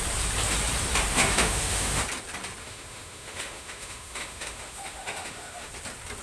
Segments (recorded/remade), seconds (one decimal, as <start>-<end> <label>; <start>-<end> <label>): 0.0-1.1 recorded; 1.1-2.0 remade; 2.0-2.6 recorded; 2.6-5.7 remade; 5.7-6.2 recorded